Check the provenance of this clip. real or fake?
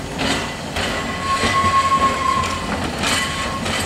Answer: real